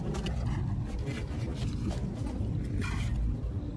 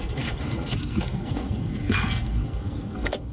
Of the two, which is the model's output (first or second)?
second